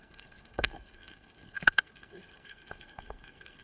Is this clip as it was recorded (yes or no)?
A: no